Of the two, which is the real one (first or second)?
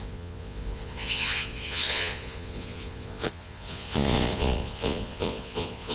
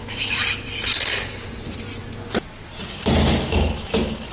second